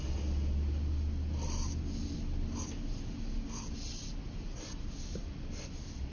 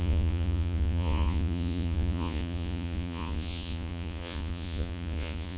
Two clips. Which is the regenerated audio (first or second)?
second